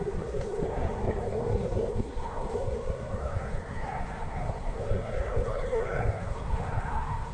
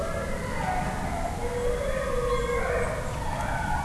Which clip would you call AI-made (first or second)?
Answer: first